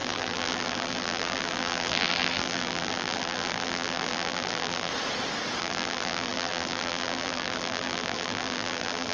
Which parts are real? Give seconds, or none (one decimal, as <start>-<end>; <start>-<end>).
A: 4.9-5.6